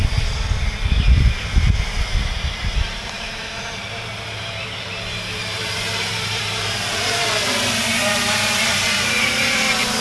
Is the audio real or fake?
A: fake